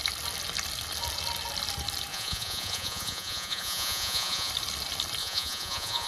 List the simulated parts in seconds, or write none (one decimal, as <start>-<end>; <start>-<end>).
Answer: 2.1-4.5; 5.2-6.1